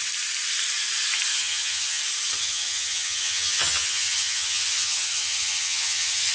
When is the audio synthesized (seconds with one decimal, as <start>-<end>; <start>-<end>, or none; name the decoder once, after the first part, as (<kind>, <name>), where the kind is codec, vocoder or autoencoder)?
1.3-2.0 (vocoder, HiFi-GAN); 2.4-6.3